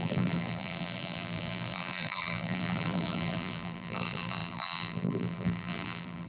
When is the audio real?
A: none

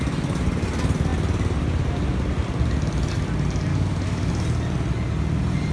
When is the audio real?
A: 0.0-3.7; 4.3-5.7

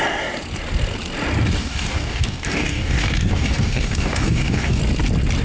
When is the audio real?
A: 0.0-1.6; 4.8-5.4

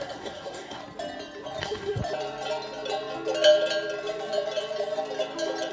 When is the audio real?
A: 0.8-1.6; 2.0-5.7

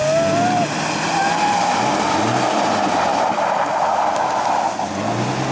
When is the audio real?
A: 0.0-5.5